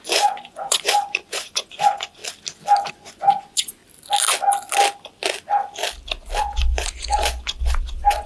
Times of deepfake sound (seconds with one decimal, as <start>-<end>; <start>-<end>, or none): 0.0-2.2; 2.9-3.8; 6.4-8.3